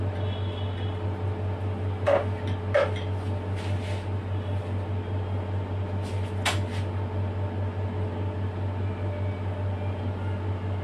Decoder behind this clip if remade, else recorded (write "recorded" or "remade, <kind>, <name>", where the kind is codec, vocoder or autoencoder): recorded